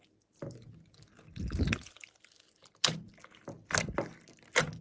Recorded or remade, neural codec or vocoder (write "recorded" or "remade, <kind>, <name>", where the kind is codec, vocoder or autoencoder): recorded